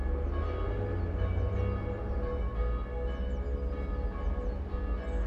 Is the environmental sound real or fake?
real